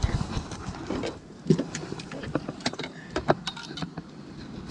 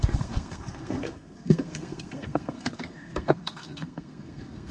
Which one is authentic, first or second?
first